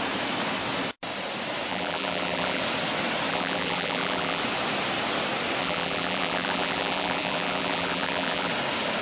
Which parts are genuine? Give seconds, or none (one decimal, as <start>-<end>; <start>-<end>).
0.0-1.7; 2.6-3.3; 4.4-5.6; 8.5-9.0